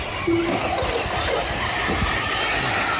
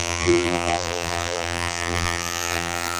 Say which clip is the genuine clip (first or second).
first